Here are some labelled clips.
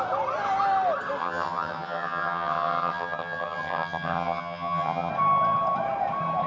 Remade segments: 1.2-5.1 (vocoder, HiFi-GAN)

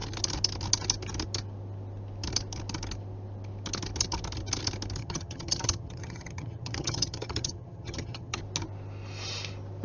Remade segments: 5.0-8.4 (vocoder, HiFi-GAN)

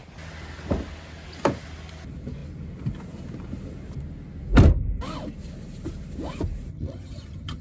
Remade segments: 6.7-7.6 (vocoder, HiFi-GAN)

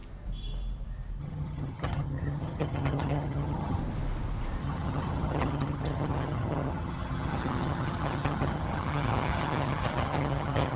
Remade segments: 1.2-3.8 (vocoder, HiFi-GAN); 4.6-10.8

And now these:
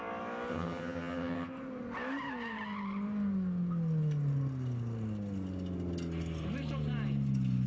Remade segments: 0.5-1.5 (vocoder, HiFi-GAN)

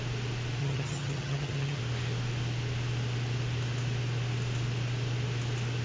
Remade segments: 0.6-1.8 (vocoder, HiFi-GAN)